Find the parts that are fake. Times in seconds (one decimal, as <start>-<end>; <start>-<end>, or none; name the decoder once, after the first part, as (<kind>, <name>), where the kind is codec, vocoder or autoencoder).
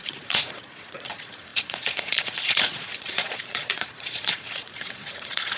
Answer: 0.0-5.6 (vocoder, Vocos)